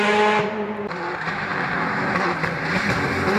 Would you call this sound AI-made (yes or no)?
no